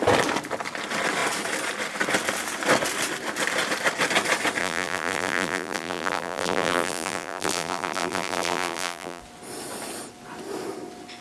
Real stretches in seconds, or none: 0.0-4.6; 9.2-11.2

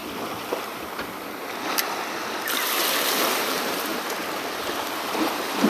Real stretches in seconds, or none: 0.0-3.4; 3.9-4.8

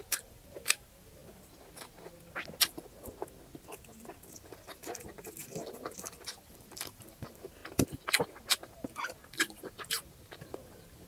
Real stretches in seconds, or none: 1.2-6.4; 7.6-8.6

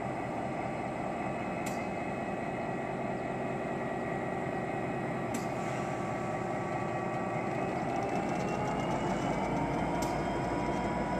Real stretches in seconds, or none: 0.0-5.3; 6.8-11.2